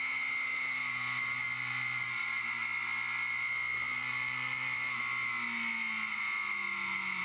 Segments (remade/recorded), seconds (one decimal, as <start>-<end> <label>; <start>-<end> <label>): 0.0-7.2 recorded